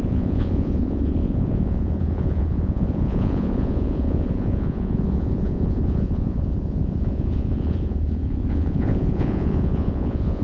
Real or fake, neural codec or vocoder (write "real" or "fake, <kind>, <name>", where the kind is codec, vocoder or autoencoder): fake, vocoder, Vocos